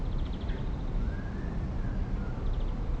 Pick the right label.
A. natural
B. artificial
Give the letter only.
A